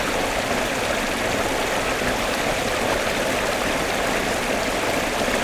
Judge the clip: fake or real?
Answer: real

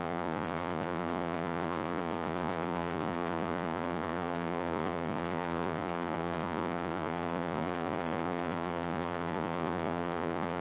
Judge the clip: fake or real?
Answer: fake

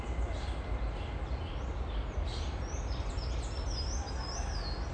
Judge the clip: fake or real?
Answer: real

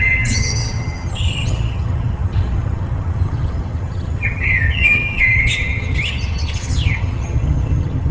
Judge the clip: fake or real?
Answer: fake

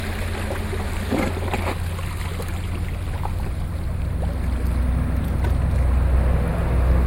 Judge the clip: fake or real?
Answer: real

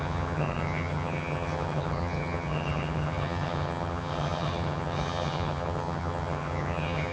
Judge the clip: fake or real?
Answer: fake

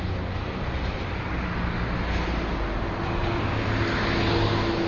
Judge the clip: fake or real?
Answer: real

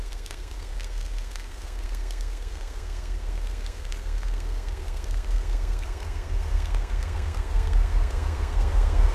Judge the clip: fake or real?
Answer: fake